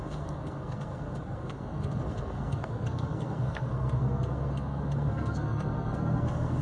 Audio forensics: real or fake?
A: fake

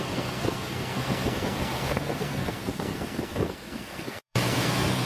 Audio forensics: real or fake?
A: fake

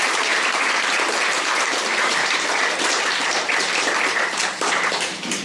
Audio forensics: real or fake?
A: fake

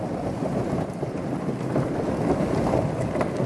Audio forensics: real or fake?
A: real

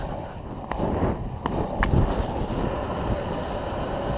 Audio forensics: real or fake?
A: real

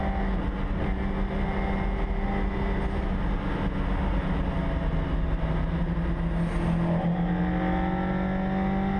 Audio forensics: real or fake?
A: real